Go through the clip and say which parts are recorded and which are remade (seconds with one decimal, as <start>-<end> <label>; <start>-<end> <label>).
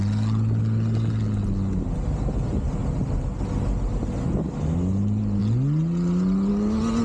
0.0-7.0 recorded